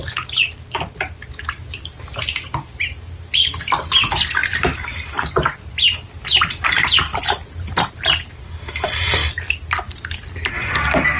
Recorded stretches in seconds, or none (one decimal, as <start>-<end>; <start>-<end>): 0.0-7.1; 7.9-11.2